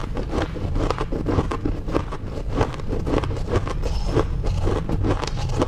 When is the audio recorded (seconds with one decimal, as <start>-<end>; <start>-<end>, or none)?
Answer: 0.0-5.7